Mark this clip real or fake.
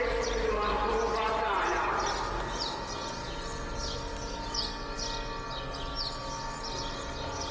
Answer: real